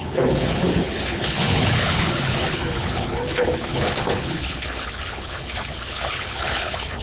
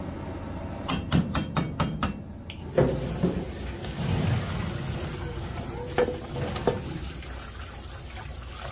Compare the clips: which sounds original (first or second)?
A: second